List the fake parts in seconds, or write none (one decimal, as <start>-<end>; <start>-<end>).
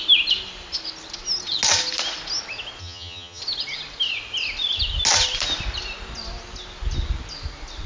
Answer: 2.8-3.4